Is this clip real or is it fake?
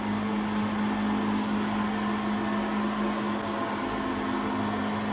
real